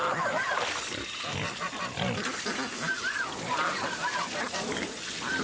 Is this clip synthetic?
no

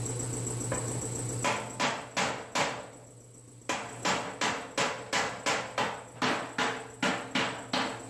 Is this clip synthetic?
no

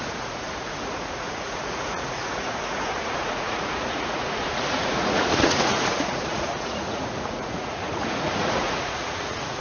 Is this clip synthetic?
yes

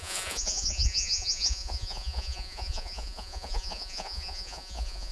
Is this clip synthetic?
yes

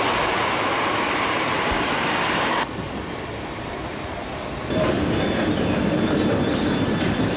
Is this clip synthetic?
no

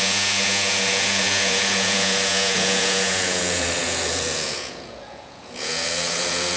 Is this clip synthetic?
yes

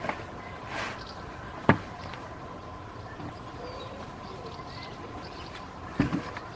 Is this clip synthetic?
no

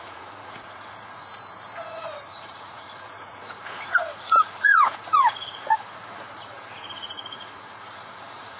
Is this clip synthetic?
yes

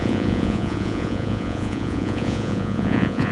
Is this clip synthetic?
yes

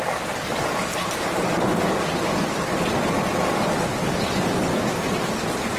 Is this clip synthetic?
no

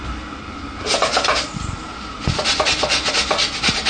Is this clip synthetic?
no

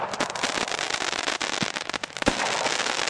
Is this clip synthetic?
no